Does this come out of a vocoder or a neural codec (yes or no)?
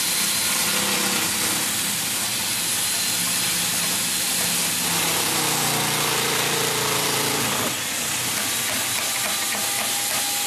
no